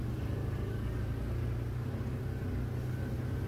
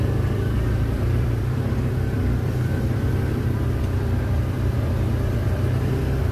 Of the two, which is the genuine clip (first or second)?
first